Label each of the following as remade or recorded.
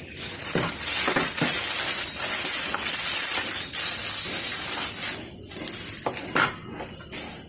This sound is recorded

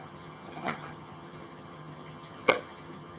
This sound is remade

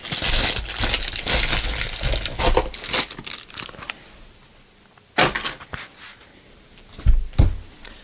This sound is recorded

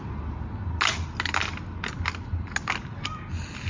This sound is recorded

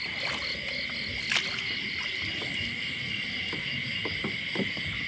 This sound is recorded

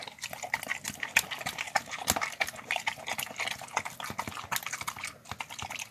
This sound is recorded